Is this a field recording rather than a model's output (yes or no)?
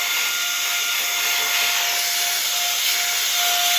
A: yes